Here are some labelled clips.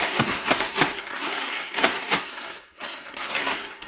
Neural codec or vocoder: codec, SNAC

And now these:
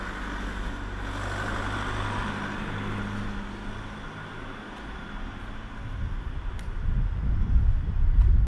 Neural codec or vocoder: none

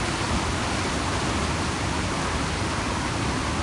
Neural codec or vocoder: none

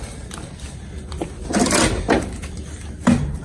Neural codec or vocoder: none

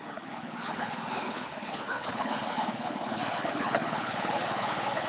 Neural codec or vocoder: codec, HILCodec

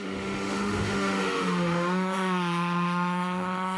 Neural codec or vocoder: autoencoder, DAC-VAE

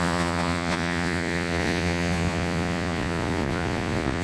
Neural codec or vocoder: vocoder, Vocos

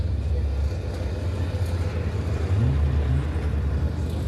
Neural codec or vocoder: none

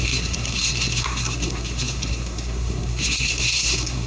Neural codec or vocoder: codec, SNAC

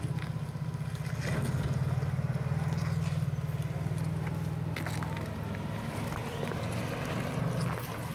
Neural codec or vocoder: none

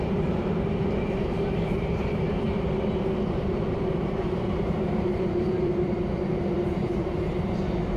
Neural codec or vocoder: vocoder, BigVGAN v2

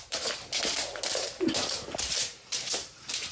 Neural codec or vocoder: none